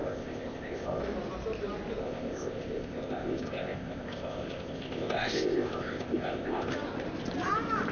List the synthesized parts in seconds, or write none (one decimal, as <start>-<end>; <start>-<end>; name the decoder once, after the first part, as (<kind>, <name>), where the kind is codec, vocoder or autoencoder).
0.0-1.0 (codec, ZipCodec); 2.0-6.7